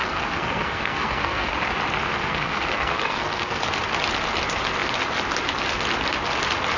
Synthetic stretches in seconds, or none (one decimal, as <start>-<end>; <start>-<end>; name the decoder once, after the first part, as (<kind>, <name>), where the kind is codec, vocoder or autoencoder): 0.0-1.5 (codec, SNAC); 2.2-3.6

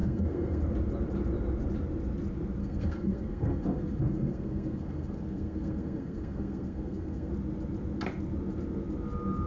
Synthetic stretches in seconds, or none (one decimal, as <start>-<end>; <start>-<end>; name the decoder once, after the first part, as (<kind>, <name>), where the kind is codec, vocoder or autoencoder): 0.0-0.6 (codec, SNAC); 2.6-7.3

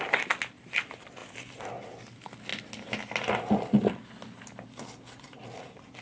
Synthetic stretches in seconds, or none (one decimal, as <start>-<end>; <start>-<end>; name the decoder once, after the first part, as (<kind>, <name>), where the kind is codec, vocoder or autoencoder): none

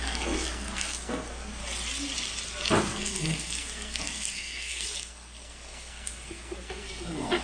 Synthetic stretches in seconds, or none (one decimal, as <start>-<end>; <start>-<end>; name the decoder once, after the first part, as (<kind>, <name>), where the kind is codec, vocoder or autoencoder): 0.0-1.6 (codec, SNAC); 2.8-7.4

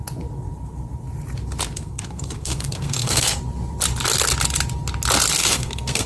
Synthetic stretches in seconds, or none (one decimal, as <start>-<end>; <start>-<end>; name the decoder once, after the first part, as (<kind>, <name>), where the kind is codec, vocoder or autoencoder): 1.8-3.4 (codec, SNAC); 5.4-6.1

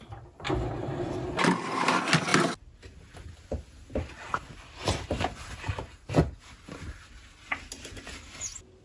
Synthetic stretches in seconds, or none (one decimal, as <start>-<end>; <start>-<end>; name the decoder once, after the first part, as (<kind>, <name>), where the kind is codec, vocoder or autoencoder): none